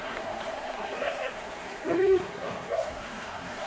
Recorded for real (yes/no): no